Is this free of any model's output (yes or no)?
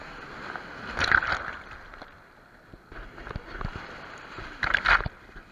yes